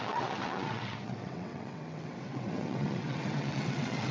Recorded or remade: remade